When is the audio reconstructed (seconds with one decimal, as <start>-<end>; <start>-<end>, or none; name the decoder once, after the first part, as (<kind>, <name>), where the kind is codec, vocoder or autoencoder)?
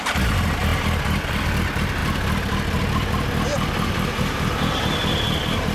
none